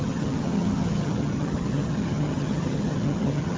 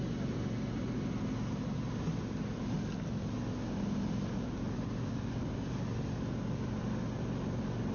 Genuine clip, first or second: second